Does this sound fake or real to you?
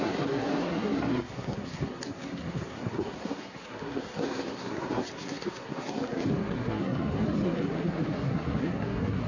fake